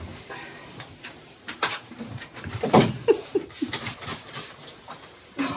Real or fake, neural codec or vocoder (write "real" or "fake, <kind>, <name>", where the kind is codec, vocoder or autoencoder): fake, vocoder, BigVGAN v2